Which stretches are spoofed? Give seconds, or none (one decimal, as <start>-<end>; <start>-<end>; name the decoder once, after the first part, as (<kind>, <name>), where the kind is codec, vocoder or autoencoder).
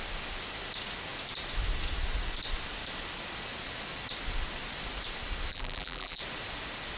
5.5-6.2 (vocoder, BigVGAN v2)